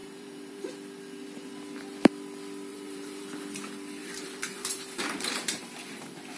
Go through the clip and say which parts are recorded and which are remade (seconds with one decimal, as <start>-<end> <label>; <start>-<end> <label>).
0.0-0.7 remade; 0.7-2.7 recorded; 2.7-3.4 remade; 3.4-4.0 recorded; 4.0-6.0 remade; 6.0-6.4 recorded